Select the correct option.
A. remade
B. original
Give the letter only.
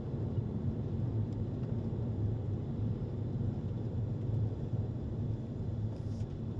A